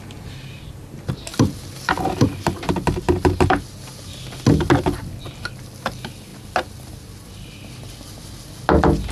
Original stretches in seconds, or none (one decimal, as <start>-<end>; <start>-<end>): 0.0-9.1